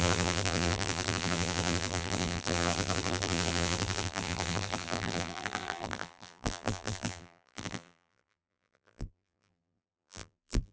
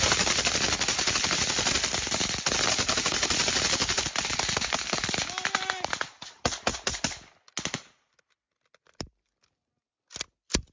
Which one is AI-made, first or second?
first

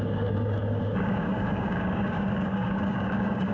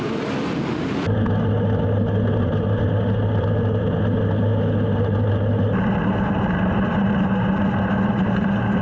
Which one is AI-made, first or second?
first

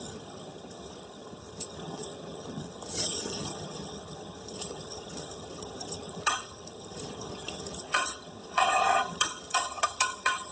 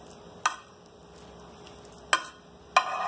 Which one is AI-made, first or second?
first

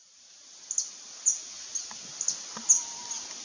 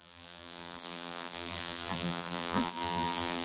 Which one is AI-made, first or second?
second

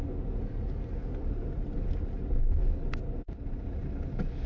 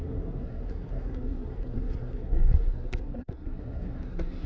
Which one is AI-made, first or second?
second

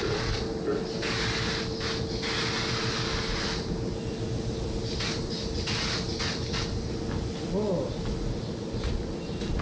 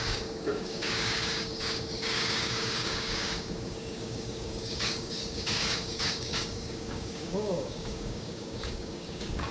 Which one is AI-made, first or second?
second